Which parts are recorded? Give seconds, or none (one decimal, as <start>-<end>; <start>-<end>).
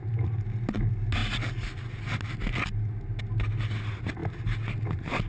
0.0-5.3